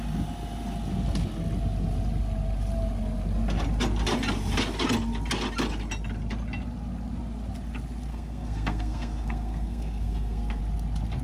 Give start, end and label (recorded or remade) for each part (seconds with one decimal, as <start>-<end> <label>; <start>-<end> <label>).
0.0-8.1 recorded; 8.1-10.6 remade; 10.6-11.2 recorded